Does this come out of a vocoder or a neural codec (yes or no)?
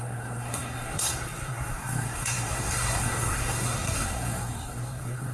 yes